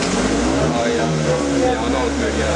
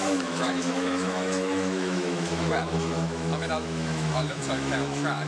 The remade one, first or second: second